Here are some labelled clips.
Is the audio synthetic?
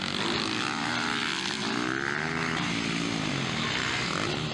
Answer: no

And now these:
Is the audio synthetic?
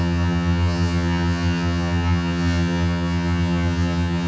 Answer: yes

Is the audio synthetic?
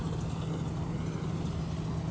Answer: no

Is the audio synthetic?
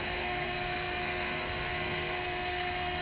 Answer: yes